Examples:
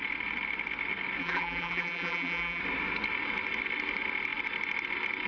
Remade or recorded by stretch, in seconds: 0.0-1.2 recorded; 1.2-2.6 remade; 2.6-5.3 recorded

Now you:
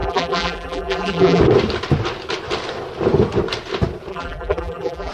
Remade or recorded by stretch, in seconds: 0.0-1.4 remade; 1.4-4.1 recorded; 4.1-5.1 remade

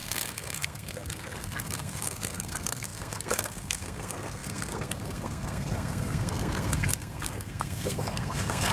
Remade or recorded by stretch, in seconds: 0.0-8.7 remade

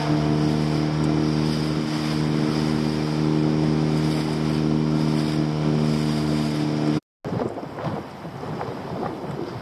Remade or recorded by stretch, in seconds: 0.0-9.6 recorded

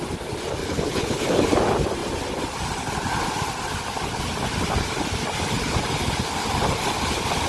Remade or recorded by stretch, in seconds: 0.0-0.6 recorded; 0.6-1.4 remade; 1.4-7.5 recorded